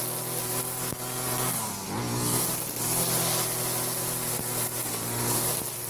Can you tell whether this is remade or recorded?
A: recorded